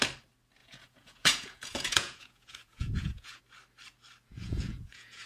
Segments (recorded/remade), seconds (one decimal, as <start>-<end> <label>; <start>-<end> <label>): 0.0-0.6 recorded; 0.6-3.4 remade; 3.4-4.4 recorded; 4.4-5.3 remade